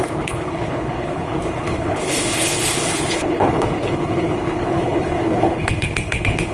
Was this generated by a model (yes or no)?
yes